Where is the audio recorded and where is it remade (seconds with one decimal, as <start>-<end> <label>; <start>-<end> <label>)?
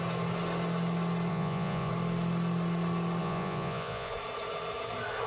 0.0-1.3 recorded; 1.3-1.9 remade; 1.9-3.2 recorded; 3.2-4.1 remade; 4.1-5.3 recorded